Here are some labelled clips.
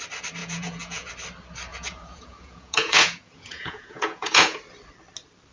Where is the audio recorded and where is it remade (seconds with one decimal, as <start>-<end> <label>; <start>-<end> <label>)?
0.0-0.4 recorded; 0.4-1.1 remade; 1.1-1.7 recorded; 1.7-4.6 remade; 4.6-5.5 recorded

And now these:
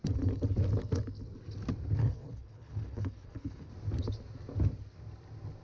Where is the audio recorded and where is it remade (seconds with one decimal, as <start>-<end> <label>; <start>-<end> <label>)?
0.0-2.0 recorded; 2.0-3.7 remade; 3.7-5.6 recorded

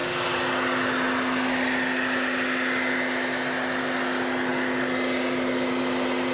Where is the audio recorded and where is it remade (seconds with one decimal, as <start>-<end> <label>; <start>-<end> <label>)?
0.0-6.3 recorded